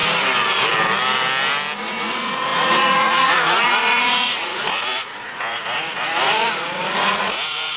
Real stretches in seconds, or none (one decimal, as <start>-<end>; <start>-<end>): 0.0-1.8